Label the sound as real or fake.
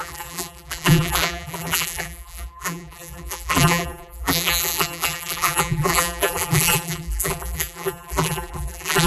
fake